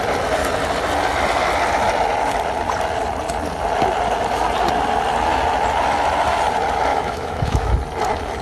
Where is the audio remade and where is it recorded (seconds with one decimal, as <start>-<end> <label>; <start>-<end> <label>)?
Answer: 0.0-6.9 recorded; 6.9-7.7 remade; 7.7-8.4 recorded